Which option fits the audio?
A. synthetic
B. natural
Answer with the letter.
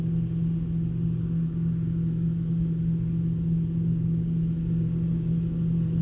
B